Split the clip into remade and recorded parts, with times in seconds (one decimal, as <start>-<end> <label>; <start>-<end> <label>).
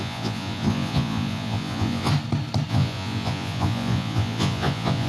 0.0-2.1 remade; 2.1-2.7 recorded; 2.7-5.1 remade